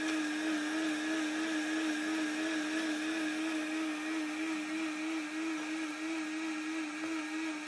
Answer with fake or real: real